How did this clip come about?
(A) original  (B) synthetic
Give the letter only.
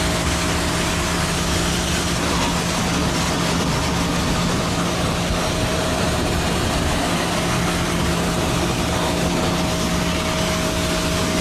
A